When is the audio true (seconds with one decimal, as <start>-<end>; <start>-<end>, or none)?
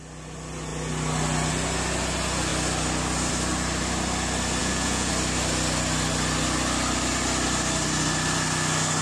0.0-4.6; 5.1-9.0